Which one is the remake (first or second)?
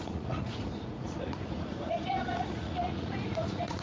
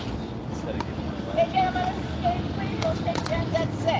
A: first